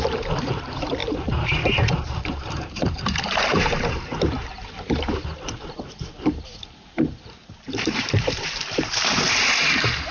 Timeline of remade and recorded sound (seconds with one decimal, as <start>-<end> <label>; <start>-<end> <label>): 0.0-10.1 remade